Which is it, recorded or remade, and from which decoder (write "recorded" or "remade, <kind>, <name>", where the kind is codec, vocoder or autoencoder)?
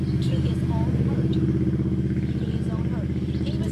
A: recorded